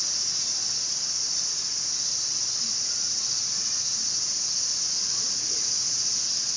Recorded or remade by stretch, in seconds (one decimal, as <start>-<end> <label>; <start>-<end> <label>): 0.0-6.6 recorded